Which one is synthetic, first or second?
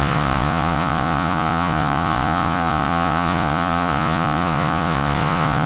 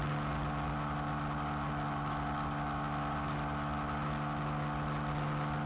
first